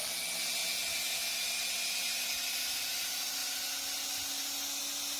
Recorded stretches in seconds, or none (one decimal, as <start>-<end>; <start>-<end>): 0.0-5.2